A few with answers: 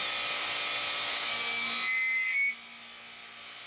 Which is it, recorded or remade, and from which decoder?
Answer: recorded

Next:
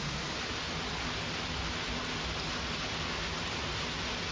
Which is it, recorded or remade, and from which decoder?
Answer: recorded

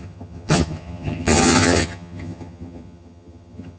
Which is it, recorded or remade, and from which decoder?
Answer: remade, vocoder, HiFi-GAN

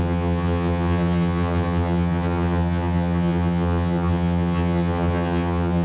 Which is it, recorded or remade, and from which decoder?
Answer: remade, vocoder, HiFi-GAN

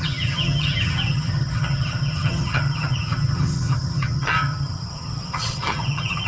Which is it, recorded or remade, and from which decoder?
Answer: remade, vocoder, HiFi-GAN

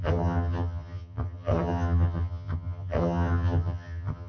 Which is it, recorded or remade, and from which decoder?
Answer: remade, vocoder, HiFi-GAN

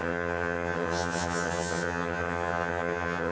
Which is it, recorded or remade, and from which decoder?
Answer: remade, vocoder, HiFi-GAN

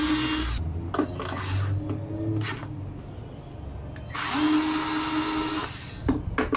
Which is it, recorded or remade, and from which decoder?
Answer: recorded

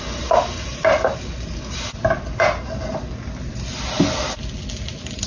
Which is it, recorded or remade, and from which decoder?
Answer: recorded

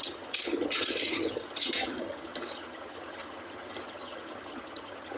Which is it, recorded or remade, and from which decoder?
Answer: remade, vocoder, HiFi-GAN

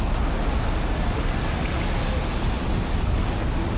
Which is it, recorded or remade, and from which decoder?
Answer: recorded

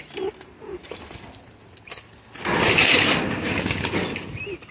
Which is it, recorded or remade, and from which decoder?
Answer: recorded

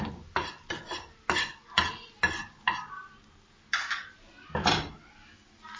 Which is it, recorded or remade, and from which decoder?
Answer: recorded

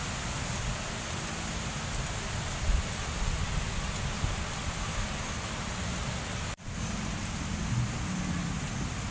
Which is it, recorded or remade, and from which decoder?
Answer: recorded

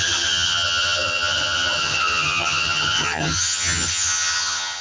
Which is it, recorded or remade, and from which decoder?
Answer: remade, vocoder, HiFi-GAN